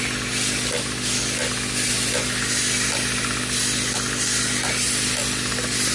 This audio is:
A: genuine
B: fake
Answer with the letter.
A